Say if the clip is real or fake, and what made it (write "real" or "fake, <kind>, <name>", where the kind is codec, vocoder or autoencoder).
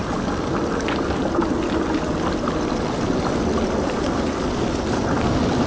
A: real